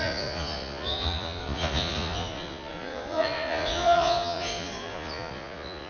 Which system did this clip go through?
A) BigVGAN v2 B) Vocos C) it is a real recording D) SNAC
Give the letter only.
B